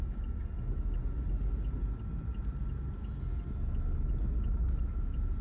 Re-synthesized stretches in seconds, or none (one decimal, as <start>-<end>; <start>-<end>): none